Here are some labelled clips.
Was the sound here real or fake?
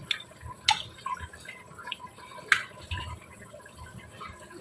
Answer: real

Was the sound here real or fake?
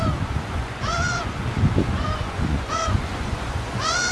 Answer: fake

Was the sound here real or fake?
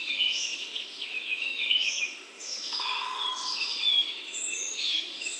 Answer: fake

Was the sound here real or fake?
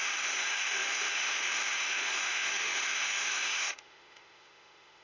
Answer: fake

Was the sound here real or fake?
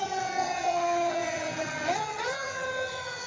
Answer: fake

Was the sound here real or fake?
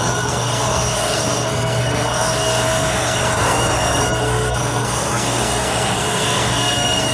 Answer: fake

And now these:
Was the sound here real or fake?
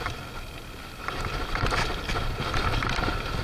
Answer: real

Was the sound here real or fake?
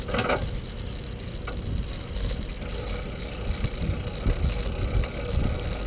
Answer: real